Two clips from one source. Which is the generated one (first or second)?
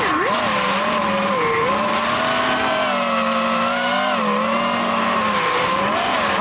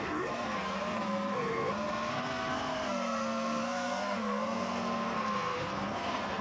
second